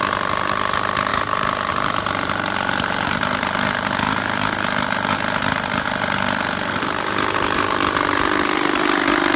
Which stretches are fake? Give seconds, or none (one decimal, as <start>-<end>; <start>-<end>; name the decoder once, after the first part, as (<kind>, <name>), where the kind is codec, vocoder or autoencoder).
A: 0.0-9.4 (vocoder, BigVGAN v2)